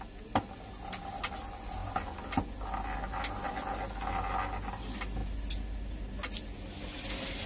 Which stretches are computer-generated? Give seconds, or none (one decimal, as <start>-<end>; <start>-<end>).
none